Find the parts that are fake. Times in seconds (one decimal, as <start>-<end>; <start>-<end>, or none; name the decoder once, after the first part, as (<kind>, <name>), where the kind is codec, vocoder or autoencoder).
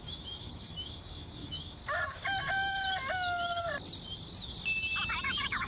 0.0-1.8 (autoencoder, DAC-VAE); 5.2-5.7